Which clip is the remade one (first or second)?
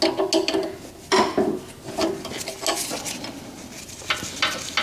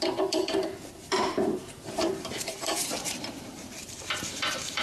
second